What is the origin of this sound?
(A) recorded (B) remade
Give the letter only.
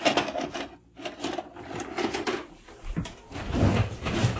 A